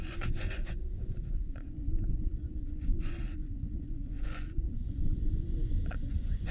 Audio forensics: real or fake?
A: fake